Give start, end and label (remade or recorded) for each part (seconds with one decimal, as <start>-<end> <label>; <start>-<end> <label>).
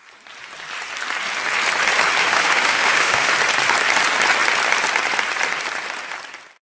0.0-2.2 recorded; 2.2-3.3 remade; 3.3-6.7 recorded